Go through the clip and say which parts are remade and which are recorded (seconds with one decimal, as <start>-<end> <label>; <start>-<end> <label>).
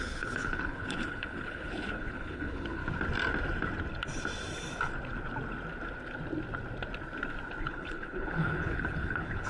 0.0-2.8 remade; 2.8-7.6 recorded; 7.6-9.5 remade